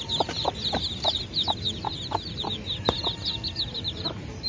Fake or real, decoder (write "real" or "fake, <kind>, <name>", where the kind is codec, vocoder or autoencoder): fake, vocoder, BigVGAN v2